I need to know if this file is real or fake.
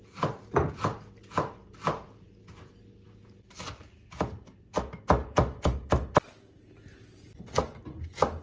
real